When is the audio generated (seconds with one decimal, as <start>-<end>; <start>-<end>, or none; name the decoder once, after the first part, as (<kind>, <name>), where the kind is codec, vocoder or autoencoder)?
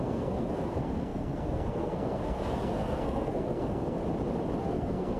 0.0-4.0 (codec, SNAC); 4.6-5.2